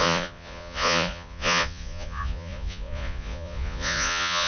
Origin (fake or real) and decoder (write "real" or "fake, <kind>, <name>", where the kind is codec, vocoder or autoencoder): fake, vocoder, Vocos